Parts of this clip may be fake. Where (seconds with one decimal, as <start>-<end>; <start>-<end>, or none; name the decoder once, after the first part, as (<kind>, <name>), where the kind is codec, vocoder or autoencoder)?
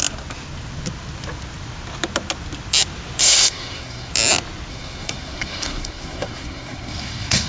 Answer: 3.2-4.1 (codec, SNAC); 4.7-7.5